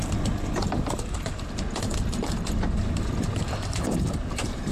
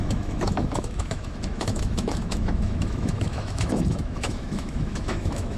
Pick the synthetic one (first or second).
second